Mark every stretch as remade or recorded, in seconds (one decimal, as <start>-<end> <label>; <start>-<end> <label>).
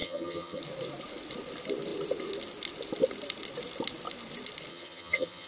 0.0-0.6 remade; 0.6-4.7 recorded; 4.7-5.5 remade